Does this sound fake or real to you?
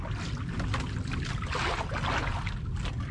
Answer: real